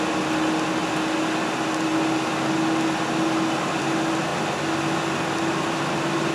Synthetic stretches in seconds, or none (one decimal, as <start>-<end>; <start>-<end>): none